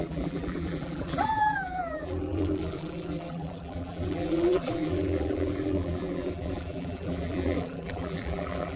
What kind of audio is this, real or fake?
fake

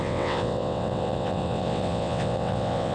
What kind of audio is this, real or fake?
fake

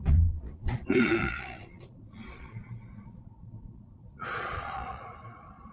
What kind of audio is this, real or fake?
fake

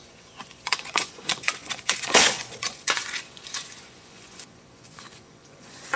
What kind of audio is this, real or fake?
fake